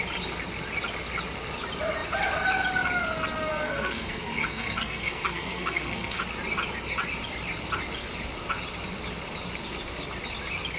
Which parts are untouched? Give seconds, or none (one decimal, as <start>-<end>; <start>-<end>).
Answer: 0.0-3.5; 6.2-10.8